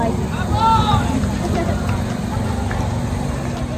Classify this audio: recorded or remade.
recorded